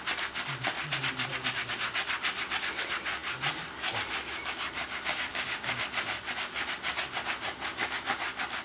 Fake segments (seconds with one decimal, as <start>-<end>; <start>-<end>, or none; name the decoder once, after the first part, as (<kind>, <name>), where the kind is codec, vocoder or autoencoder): 5.3-5.8 (codec, DAC)